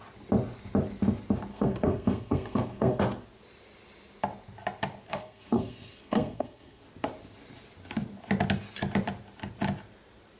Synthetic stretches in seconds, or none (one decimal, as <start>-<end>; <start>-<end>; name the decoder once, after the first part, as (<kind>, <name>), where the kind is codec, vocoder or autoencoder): 1.5-3.0 (codec, SNAC); 5.1-6.8